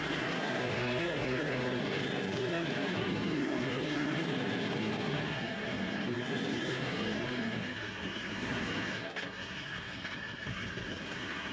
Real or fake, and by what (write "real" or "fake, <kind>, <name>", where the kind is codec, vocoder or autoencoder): fake, codec, SNAC